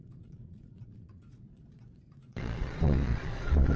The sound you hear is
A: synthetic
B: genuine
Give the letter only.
A